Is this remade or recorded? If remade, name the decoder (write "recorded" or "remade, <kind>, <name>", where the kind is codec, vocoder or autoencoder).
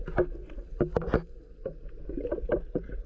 recorded